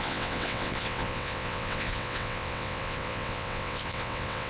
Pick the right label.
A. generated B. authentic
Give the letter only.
A